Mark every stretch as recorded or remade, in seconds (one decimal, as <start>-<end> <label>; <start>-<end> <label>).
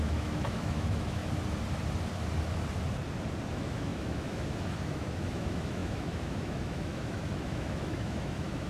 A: 0.0-1.2 remade; 1.2-3.5 recorded; 3.5-8.7 remade